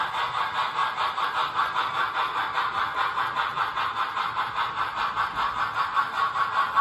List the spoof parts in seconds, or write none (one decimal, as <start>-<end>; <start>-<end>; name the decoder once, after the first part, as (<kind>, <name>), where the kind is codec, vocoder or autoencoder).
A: none